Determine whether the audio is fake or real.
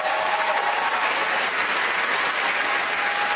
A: real